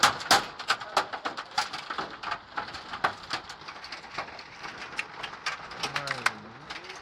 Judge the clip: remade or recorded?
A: recorded